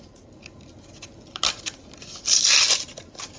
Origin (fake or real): real